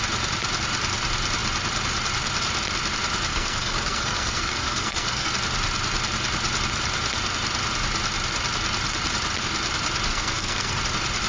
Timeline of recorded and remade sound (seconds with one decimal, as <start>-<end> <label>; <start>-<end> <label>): 0.0-3.3 recorded; 3.3-5.3 remade; 5.3-10.1 recorded; 10.1-10.8 remade; 10.8-11.3 recorded